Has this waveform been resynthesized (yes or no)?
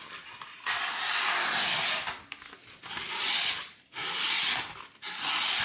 no